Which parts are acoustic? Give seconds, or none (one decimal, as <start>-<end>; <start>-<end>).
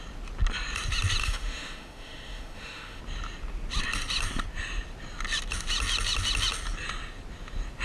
0.0-1.2; 3.0-7.8